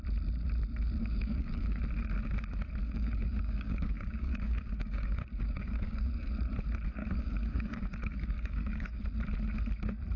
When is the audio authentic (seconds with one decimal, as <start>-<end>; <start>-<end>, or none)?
0.0-1.0; 1.8-2.8; 6.1-7.0; 9.0-10.2